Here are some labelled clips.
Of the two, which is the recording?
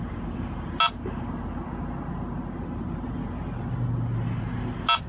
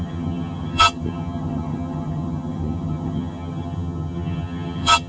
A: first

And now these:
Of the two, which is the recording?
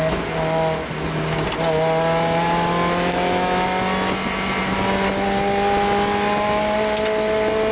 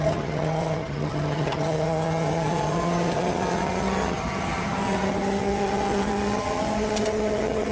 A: first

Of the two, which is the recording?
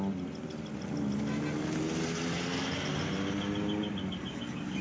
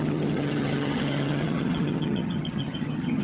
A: first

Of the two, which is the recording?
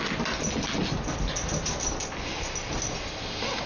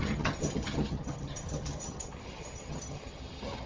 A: first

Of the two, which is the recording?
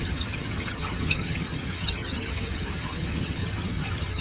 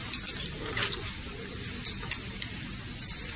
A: second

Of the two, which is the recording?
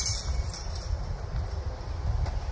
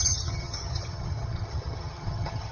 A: first